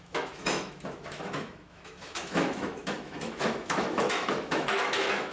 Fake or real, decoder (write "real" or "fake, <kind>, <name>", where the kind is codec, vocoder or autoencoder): fake, autoencoder, DAC-VAE